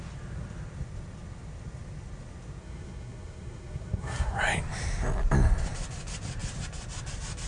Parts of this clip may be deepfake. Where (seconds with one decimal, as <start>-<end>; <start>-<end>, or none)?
2.6-4.4